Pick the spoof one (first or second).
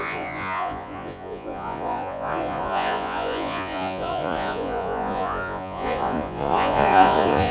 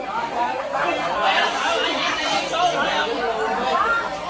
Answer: first